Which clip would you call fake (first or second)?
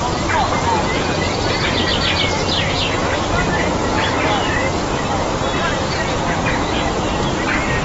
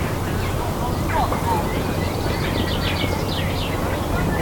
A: second